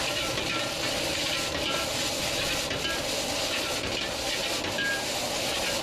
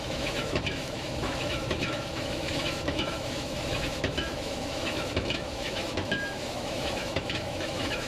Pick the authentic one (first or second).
first